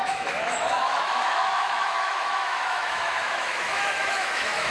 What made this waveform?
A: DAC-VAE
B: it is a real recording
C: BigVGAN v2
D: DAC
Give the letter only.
A